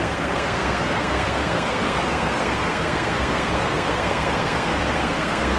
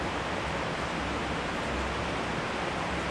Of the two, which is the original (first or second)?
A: second